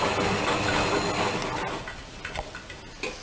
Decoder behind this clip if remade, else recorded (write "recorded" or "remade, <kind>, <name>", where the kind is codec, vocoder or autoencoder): recorded